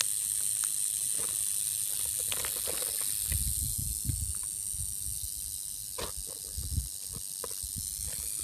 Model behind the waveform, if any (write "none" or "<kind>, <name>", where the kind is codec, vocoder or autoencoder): none